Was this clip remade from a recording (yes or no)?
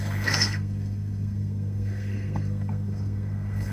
yes